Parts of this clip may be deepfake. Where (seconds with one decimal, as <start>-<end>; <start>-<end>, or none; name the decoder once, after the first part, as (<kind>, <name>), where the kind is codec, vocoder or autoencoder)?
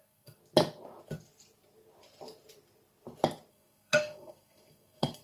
0.0-0.4 (codec, SNAC); 3.5-5.2